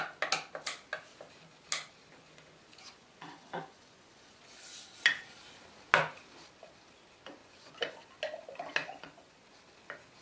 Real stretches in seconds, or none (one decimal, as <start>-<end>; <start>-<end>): 0.0-2.2; 4.4-7.4; 8.1-8.8; 9.4-10.2